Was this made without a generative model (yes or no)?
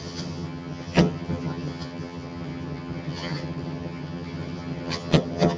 no